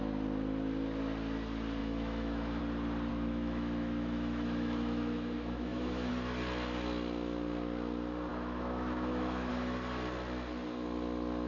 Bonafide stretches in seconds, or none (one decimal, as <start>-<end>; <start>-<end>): 0.0-1.8; 2.6-3.1; 6.1-8.3; 9.5-11.5